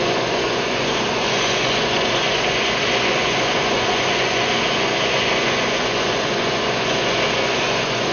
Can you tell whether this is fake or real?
fake